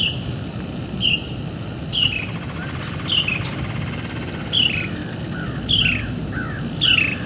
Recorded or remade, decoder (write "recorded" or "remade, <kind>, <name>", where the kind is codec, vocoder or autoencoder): recorded